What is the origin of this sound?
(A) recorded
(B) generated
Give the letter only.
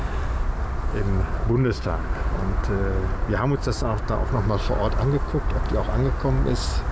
A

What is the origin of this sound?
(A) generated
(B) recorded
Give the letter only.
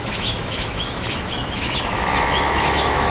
A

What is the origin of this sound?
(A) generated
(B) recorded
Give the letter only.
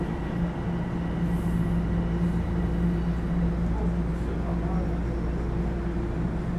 B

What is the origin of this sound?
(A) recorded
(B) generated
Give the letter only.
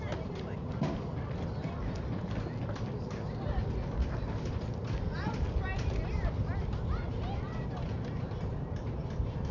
A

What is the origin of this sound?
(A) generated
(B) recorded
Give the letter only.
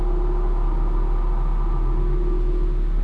B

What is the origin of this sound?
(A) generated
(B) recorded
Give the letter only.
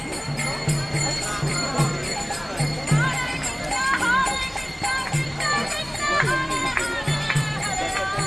A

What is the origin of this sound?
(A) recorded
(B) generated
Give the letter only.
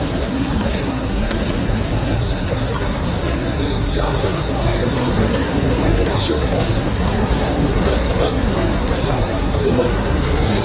B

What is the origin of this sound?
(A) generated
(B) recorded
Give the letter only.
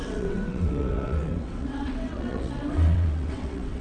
A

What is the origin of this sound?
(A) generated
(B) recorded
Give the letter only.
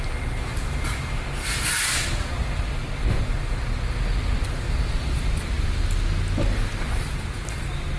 B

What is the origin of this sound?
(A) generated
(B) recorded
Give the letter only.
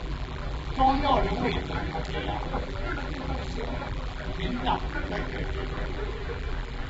A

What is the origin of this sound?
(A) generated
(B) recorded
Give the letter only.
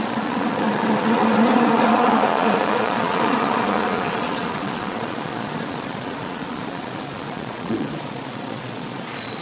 A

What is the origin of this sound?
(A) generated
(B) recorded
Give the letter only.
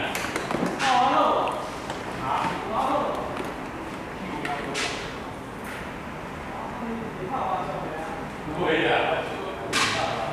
B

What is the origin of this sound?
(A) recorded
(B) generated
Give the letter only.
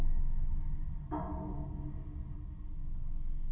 A